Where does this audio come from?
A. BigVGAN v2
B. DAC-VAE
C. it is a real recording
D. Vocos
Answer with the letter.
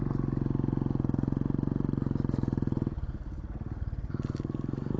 C